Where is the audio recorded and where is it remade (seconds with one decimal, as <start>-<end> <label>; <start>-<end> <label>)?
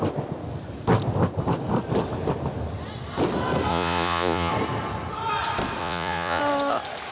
0.0-3.7 recorded; 3.7-4.5 remade; 4.5-5.8 recorded; 5.8-6.4 remade; 6.4-7.1 recorded